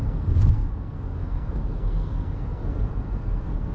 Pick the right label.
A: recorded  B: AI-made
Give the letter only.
B